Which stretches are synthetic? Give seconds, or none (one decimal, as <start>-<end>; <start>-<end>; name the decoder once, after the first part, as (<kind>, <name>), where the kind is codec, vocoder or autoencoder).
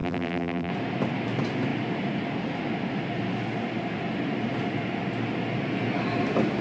0.0-0.7 (vocoder, BigVGAN v2)